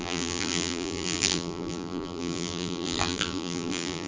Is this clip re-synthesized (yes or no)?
yes